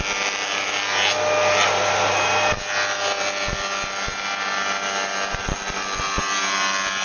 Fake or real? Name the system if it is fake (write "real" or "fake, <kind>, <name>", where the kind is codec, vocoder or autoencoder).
real